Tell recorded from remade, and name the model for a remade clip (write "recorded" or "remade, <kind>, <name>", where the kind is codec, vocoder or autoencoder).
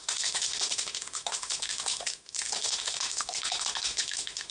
remade, autoencoder, DAC-VAE